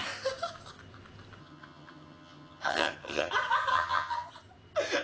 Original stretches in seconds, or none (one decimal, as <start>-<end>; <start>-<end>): 0.0-1.4; 3.3-3.7; 4.3-5.0